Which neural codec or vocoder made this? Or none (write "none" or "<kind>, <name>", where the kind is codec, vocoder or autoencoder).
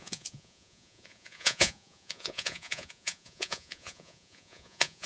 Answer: vocoder, Vocos